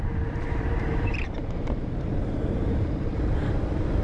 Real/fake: fake